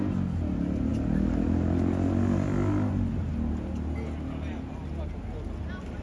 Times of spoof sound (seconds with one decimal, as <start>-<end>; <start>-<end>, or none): none